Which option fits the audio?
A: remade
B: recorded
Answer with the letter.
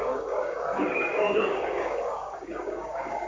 A